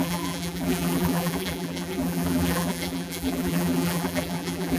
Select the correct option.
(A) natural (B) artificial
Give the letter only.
B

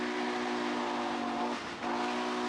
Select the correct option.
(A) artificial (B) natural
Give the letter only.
B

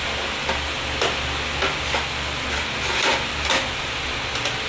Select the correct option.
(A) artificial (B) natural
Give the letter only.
B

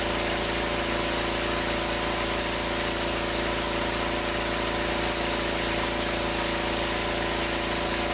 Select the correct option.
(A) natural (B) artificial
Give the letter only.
A